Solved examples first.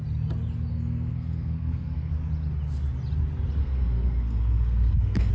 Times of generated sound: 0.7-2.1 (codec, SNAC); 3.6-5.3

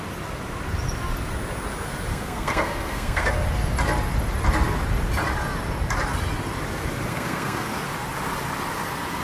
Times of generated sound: 2.1-3.3 (codec, SNAC); 7.1-7.7

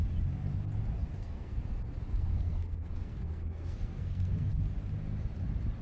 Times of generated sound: 1.0-1.6 (codec, SNAC); 2.1-4.5

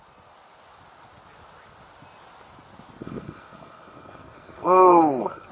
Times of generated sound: 3.0-5.5 (codec, SNAC)

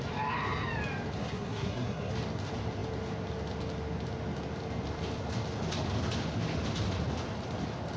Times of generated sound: 1.2-2.1 (codec, SNAC)

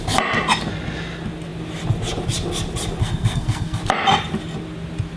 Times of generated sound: 3.0-3.8 (codec, SNAC)